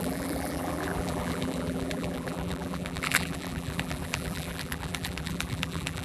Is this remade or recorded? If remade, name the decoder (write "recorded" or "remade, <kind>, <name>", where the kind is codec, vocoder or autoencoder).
remade, vocoder, BigVGAN v2